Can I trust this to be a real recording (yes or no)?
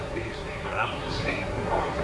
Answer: no